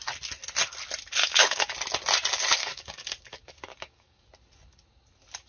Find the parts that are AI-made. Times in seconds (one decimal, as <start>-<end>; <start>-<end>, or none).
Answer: 1.2-1.7; 2.6-4.3